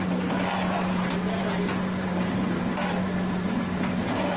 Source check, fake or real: fake